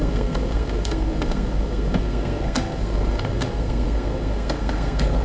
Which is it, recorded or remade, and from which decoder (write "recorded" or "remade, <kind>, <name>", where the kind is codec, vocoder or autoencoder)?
remade, codec, SNAC